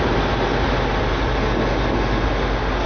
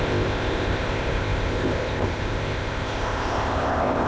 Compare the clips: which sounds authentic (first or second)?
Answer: first